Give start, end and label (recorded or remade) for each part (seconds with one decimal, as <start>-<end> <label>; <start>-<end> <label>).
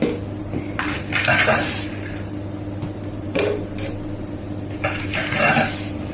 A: 0.0-0.4 remade; 0.4-2.9 recorded; 2.9-5.1 remade; 5.1-6.1 recorded